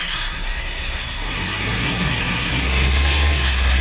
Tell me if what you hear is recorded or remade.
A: remade